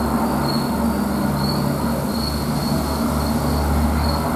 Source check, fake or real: real